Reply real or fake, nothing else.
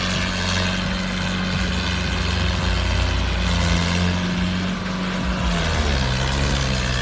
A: real